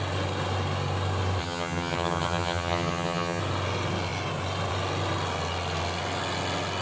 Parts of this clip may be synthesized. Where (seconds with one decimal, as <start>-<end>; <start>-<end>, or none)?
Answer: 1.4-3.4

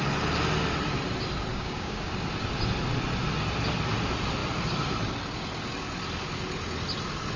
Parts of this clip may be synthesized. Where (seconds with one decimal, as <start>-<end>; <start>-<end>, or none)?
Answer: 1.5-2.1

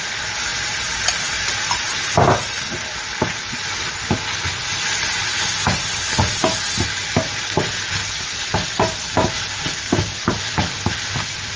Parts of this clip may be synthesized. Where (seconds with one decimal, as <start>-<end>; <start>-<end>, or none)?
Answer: 0.5-1.3

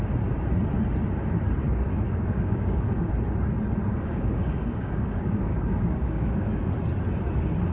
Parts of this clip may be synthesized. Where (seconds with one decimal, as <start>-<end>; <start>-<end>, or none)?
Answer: 1.6-3.1; 3.9-6.7